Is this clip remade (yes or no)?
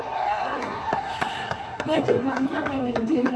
yes